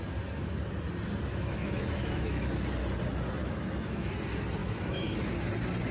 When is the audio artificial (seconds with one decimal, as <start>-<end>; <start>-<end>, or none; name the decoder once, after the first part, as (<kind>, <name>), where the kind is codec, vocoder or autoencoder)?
1.3-2.5 (autoencoder, DAC-VAE); 3.4-4.1; 4.6-5.2